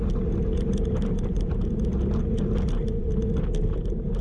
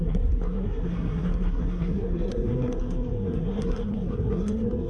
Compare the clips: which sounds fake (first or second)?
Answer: second